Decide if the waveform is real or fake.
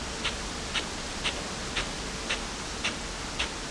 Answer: real